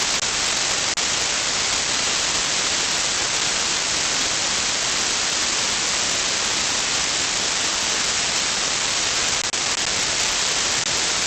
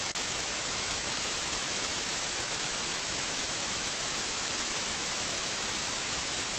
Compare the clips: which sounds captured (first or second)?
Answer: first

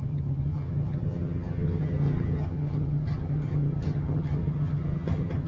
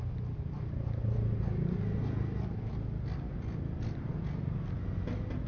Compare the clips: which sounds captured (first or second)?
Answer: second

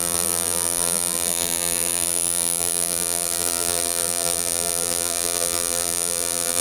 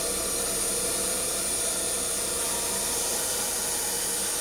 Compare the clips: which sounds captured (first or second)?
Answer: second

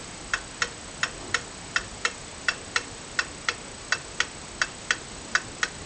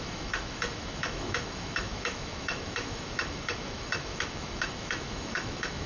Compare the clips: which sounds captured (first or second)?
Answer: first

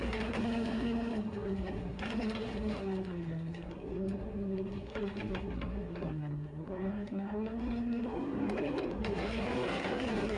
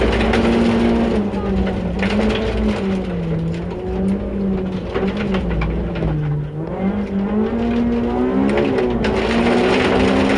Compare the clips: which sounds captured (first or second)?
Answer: second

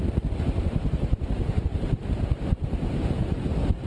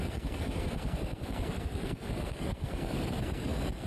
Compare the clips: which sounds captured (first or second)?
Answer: first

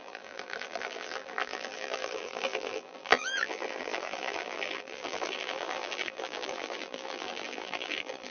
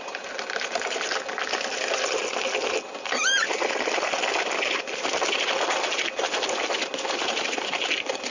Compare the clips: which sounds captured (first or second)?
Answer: second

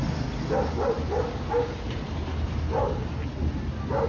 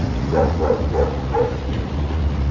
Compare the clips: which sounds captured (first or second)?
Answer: first